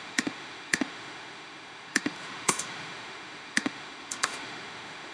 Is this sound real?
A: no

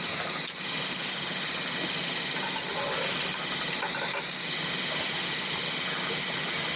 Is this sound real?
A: yes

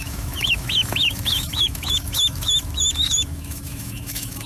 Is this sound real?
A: no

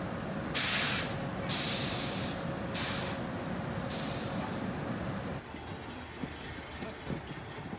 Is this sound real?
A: yes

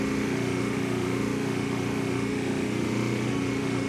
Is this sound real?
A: no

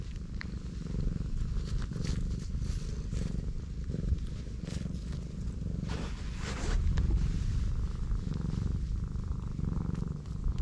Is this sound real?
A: yes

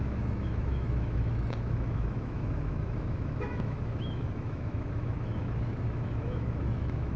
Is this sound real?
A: no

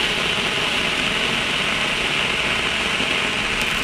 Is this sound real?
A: yes